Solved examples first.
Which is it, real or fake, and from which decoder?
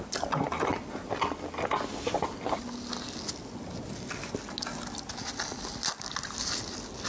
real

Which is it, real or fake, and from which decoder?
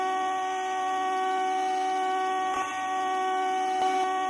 real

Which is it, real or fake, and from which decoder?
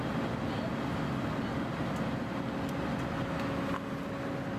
real